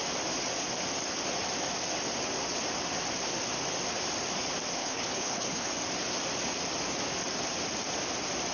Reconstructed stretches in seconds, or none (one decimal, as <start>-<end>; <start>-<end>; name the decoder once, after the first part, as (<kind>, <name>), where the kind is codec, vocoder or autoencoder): 4.8-5.7 (codec, HILCodec)